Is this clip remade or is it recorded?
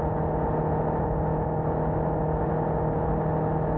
recorded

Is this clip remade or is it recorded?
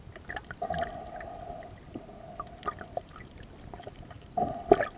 recorded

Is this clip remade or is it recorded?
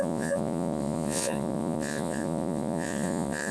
remade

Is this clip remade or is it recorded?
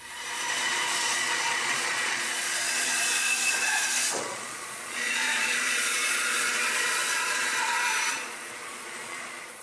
remade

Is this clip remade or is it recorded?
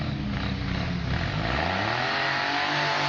recorded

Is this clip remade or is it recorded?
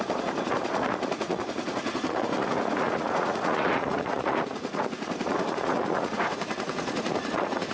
remade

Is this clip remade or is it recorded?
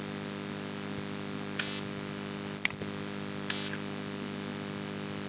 recorded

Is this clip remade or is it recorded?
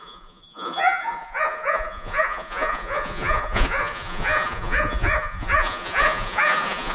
remade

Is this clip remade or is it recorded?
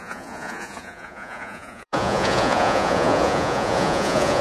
remade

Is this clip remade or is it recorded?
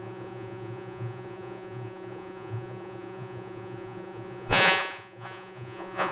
remade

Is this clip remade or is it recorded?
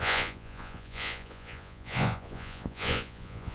remade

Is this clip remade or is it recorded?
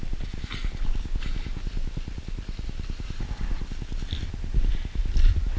recorded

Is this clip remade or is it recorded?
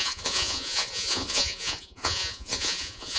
remade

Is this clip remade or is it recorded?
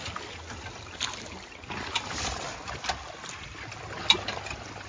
recorded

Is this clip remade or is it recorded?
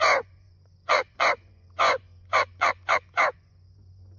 remade